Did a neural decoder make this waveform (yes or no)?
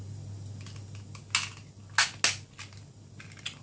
no